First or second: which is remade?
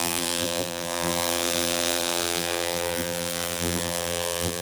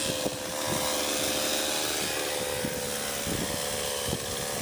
first